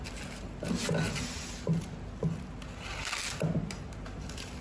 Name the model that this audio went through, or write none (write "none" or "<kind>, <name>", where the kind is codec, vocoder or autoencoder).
none